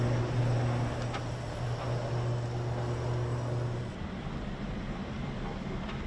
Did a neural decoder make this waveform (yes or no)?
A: no